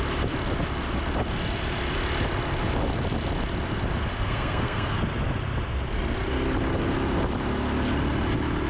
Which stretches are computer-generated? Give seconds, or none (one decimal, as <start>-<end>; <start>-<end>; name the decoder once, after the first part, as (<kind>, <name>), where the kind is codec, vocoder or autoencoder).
4.1-5.0 (codec, SNAC)